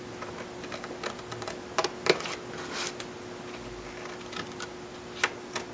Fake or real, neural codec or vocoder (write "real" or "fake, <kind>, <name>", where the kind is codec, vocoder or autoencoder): real